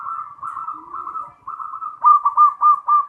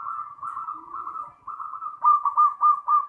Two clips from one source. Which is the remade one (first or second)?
second